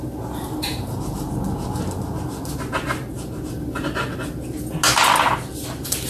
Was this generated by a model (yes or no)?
no